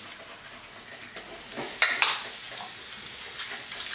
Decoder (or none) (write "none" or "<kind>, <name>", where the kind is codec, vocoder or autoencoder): none